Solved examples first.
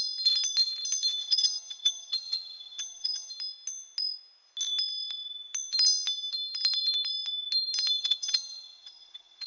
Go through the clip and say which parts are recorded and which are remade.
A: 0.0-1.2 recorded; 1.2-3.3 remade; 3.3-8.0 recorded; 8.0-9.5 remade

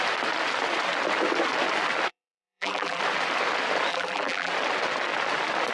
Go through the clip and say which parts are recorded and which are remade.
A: 0.0-2.1 recorded; 2.1-3.0 remade; 3.0-3.9 recorded; 3.9-4.5 remade; 4.5-5.7 recorded

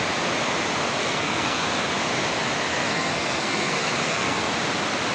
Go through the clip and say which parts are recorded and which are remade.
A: 0.0-1.0 recorded; 1.0-1.6 remade; 1.6-2.7 recorded; 2.7-4.5 remade; 4.5-5.1 recorded

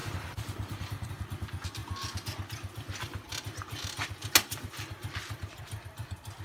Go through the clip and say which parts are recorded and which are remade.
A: 0.0-1.1 remade; 1.1-6.4 recorded

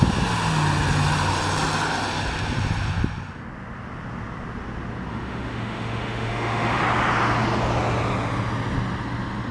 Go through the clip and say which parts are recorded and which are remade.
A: 0.0-5.1 recorded; 5.1-6.8 remade; 6.8-9.5 recorded